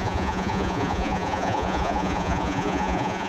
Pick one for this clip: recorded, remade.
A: remade